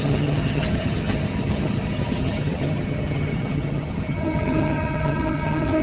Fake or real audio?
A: fake